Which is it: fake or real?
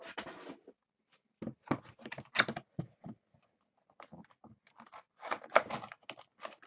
real